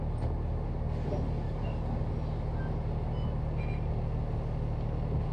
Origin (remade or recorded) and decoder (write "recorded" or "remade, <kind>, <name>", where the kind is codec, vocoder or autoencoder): recorded